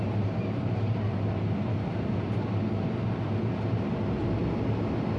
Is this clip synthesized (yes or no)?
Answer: no